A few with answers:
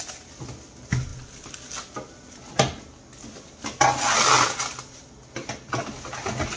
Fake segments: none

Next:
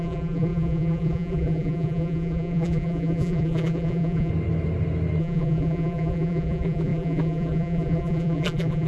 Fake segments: 0.0-4.3 (vocoder, BigVGAN v2); 5.2-8.9

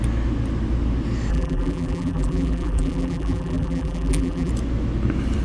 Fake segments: 1.3-4.5 (vocoder, BigVGAN v2)

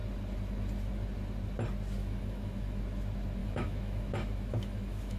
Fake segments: 2.0-2.8 (autoencoder, DAC-VAE); 3.4-5.2

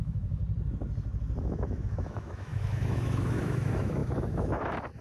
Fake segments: 0.0-0.4 (autoencoder, DAC-VAE); 1.4-5.0